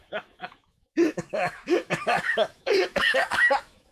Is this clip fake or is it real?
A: fake